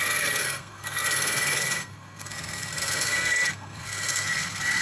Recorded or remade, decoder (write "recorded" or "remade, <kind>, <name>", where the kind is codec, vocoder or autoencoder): remade, codec, SNAC